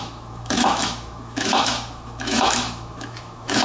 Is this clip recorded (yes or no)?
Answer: no